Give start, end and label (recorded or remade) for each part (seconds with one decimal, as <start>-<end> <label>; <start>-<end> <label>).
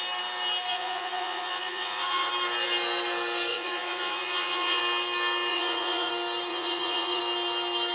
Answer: 0.0-0.7 recorded; 0.7-2.3 remade; 2.3-3.5 recorded; 3.5-4.8 remade; 4.8-5.5 recorded; 5.5-6.1 remade; 6.1-6.5 recorded; 6.5-7.2 remade; 7.2-7.9 recorded